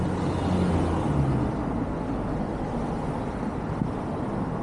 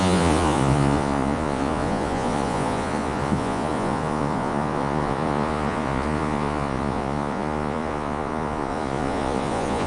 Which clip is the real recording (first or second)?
first